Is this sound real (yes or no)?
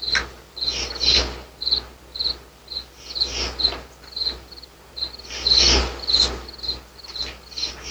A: yes